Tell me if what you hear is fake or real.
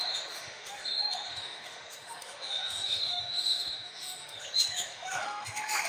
fake